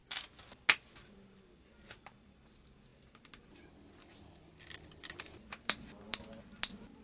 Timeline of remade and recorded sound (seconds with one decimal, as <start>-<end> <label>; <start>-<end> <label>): 0.0-7.0 recorded